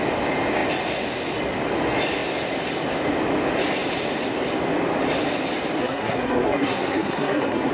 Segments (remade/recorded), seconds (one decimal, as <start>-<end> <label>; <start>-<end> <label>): 0.0-5.8 recorded; 5.8-7.7 remade